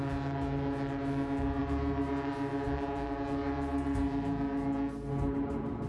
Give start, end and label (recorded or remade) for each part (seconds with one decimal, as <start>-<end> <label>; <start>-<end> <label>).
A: 0.0-5.9 recorded

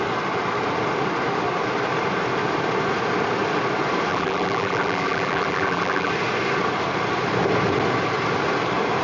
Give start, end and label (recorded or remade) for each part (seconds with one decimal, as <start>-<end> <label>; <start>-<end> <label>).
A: 0.0-4.1 recorded; 4.1-6.1 remade; 6.1-9.0 recorded

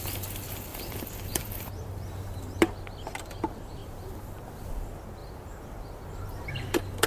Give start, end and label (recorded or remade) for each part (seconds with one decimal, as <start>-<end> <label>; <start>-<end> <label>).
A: 0.0-0.7 recorded; 0.7-2.6 remade; 2.6-3.8 recorded; 3.8-4.5 remade; 4.5-5.2 recorded; 5.2-6.5 remade; 6.5-7.1 recorded

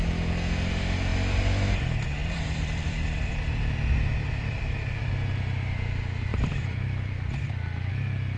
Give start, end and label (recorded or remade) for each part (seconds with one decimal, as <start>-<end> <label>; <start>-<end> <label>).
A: 0.0-2.2 recorded; 2.2-5.1 remade; 5.1-6.3 recorded; 6.3-7.9 remade; 7.9-8.4 recorded

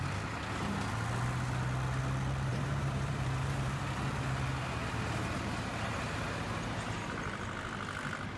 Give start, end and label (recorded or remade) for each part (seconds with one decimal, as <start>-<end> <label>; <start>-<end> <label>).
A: 0.0-2.5 recorded; 2.5-3.8 remade; 3.8-8.4 recorded

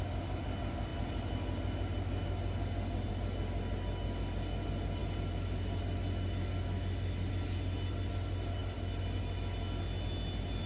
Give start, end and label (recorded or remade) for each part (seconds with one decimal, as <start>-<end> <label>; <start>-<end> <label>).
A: 0.0-8.6 recorded; 8.6-9.2 remade; 9.2-10.7 recorded

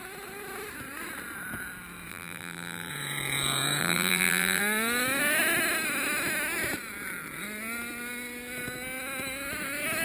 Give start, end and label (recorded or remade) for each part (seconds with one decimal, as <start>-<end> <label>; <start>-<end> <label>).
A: 0.0-2.1 recorded; 2.1-2.9 remade; 2.9-3.8 recorded; 3.8-4.6 remade; 4.6-10.0 recorded

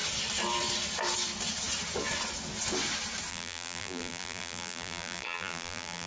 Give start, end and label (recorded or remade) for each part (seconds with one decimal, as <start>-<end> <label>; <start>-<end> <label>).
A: 0.0-3.3 recorded; 3.3-6.1 remade